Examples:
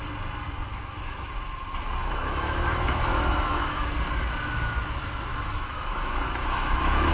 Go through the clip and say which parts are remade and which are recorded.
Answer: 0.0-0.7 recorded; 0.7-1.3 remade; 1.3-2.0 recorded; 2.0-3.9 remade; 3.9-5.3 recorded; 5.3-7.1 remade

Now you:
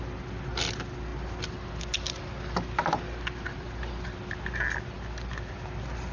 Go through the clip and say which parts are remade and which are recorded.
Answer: 0.0-6.1 recorded